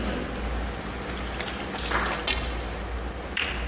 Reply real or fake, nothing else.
real